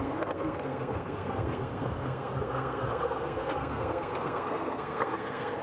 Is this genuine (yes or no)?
no